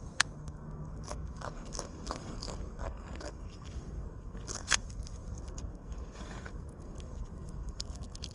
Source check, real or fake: fake